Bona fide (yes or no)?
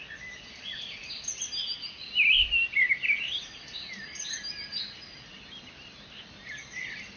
yes